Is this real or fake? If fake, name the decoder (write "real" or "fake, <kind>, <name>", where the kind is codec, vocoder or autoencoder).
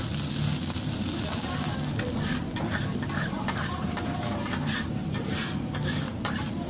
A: real